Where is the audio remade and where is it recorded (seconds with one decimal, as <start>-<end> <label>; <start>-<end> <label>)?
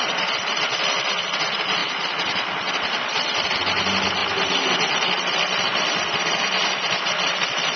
0.0-7.8 recorded